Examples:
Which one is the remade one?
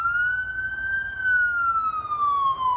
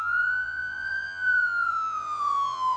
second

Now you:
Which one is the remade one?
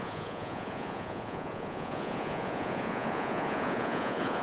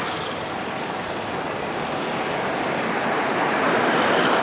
first